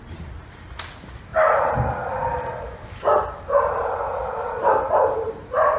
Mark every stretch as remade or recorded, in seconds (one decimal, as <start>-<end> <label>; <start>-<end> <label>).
0.0-5.8 recorded